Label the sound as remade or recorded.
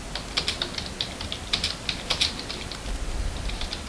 recorded